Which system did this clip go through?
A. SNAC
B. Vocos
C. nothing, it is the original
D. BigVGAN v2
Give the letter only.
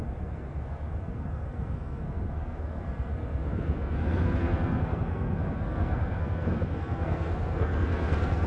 A